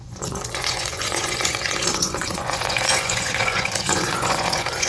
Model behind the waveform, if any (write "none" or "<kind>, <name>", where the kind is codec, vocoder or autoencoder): vocoder, Vocos